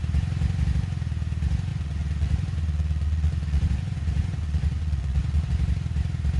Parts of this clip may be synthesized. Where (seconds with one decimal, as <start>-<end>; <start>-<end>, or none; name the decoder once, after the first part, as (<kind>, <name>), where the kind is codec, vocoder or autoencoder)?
1.7-5.5 (vocoder, Vocos)

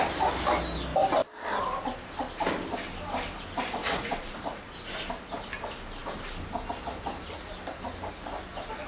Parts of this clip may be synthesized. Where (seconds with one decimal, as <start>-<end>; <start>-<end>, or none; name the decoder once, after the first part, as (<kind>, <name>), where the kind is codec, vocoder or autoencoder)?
3.8-4.7 (vocoder, Vocos)

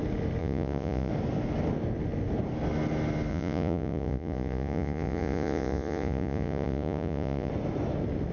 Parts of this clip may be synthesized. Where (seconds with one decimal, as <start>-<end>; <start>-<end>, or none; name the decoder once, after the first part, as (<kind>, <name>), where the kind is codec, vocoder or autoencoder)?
0.4-1.1 (vocoder, Vocos); 3.3-7.5

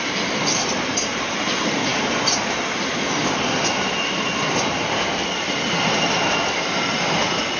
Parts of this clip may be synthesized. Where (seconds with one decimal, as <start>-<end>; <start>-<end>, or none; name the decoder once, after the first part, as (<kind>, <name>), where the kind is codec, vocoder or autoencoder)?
none

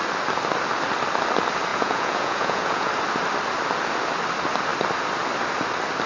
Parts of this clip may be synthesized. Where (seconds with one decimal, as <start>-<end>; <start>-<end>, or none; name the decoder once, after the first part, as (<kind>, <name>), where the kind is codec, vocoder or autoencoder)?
1.7-2.9 (vocoder, Vocos)

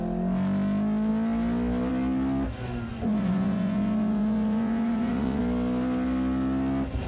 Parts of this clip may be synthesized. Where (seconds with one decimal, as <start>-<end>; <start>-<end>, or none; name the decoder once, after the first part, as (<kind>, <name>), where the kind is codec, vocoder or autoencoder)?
2.9-5.4 (vocoder, Vocos)

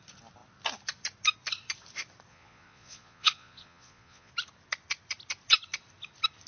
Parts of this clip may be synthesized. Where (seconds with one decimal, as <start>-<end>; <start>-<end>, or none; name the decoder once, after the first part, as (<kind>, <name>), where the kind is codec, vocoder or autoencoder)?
2.3-4.3 (vocoder, Vocos)